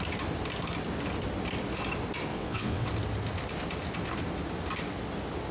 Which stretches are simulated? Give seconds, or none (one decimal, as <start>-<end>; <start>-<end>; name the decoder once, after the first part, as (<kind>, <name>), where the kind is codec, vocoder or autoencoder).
2.3-2.9 (vocoder, WaveNeXt)